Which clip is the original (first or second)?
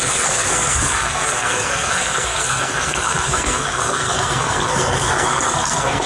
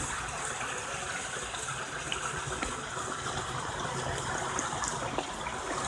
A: second